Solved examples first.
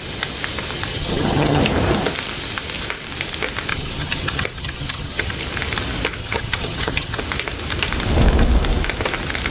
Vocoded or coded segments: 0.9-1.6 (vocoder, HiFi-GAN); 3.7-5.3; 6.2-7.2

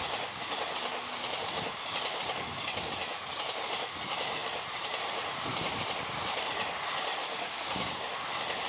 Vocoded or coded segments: 7.2-8.1 (codec, DAC)

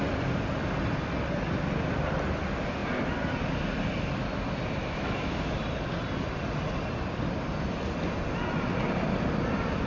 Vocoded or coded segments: 4.8-5.6 (autoencoder, DAC-VAE)

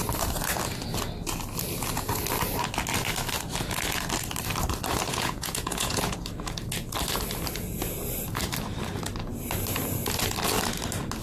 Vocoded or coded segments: 5.1-6.2 (vocoder, Vocos)

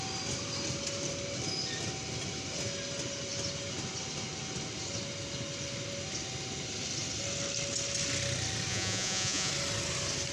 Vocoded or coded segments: 8.7-9.5 (vocoder, Vocos)

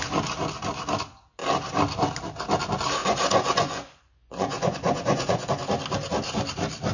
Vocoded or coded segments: 3.0-5.5 (vocoder, Vocos)

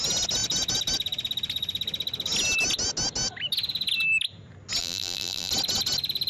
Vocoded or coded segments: 4.8-5.5 (vocoder, BigVGAN v2)